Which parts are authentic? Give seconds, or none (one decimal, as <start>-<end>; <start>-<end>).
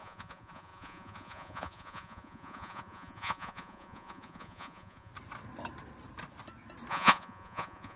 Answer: 5.1-6.9